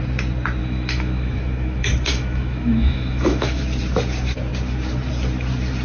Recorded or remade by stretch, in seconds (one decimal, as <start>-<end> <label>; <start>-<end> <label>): 0.0-0.6 recorded; 0.6-3.6 remade; 3.6-5.8 recorded